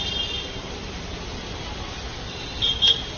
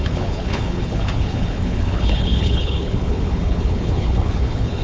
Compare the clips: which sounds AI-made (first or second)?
second